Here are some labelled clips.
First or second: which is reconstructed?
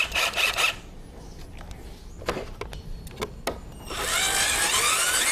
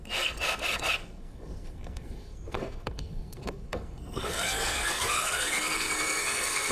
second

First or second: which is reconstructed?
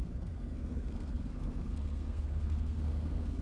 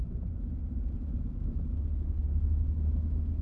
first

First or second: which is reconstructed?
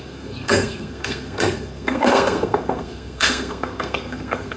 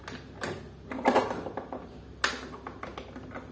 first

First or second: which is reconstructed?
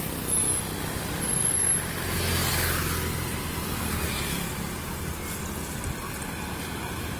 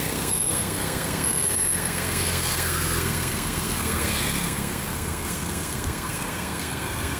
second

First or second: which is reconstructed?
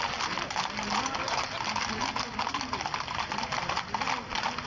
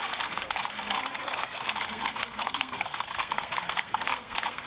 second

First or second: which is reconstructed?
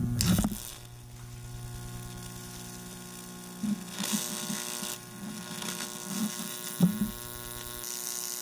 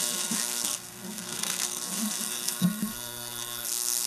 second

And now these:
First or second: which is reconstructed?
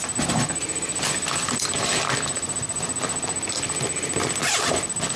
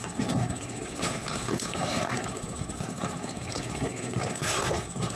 second